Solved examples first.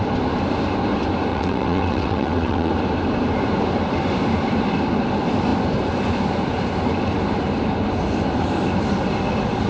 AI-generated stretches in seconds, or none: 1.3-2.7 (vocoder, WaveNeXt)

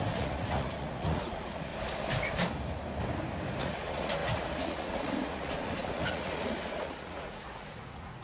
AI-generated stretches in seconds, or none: 0.0-1.7 (vocoder, Vocos); 3.6-8.2

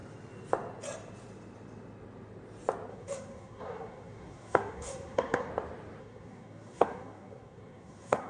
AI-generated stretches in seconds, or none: 2.9-5.5 (codec, SNAC); 6.0-8.3

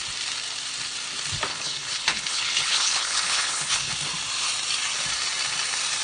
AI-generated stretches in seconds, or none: 1.5-3.9 (codec, HILCodec)

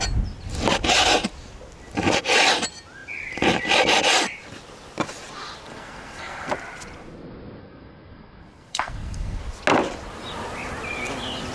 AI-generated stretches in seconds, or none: 5.7-6.5 (codec, SNAC); 7.6-9.4

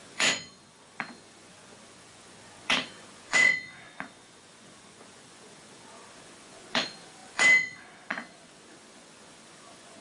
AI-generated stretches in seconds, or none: 0.0-10.0 (vocoder, Vocos)

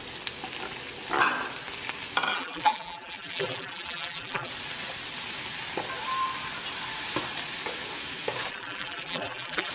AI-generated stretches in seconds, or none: 2.3-4.5 (vocoder, BigVGAN v2); 8.5-9.7